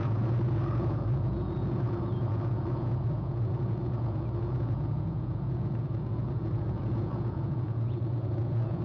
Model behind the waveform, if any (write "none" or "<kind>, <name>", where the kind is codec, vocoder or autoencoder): vocoder, Vocos